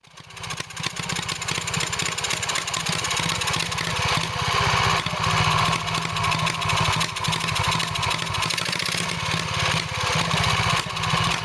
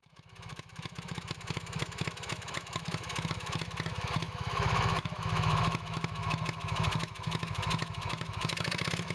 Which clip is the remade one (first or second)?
second